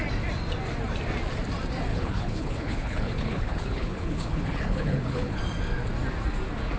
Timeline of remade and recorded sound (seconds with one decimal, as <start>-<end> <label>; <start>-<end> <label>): 0.0-1.9 recorded; 1.9-5.4 remade; 5.4-6.8 recorded

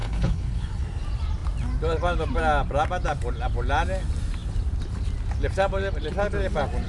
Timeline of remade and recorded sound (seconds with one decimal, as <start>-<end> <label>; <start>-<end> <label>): 0.0-0.8 remade; 0.8-6.9 recorded